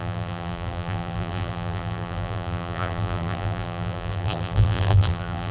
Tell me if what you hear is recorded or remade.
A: remade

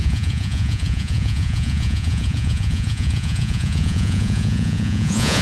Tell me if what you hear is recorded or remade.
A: remade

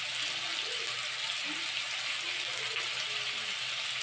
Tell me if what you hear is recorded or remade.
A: recorded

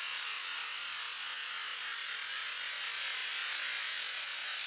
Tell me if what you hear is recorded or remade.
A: recorded